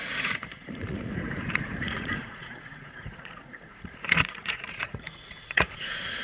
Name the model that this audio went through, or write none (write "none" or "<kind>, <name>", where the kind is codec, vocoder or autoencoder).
vocoder, Vocos